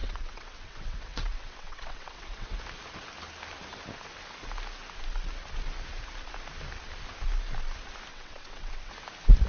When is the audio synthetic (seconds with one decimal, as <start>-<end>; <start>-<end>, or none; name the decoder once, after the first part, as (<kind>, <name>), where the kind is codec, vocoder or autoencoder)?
0.0-2.6 (vocoder, WaveNeXt); 8.1-8.9